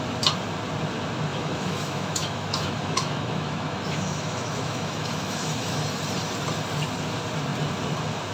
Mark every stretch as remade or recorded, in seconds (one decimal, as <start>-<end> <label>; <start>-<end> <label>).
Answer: 0.0-1.3 recorded; 1.3-5.8 remade; 5.8-8.3 recorded